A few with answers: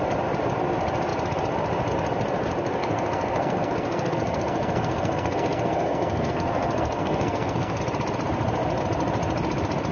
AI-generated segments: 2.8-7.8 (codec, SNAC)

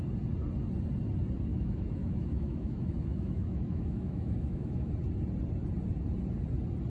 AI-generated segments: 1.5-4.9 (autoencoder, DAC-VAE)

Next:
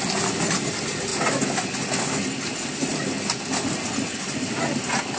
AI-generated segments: none